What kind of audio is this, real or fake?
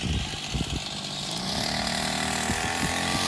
real